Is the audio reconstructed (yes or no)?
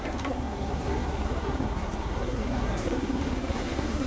yes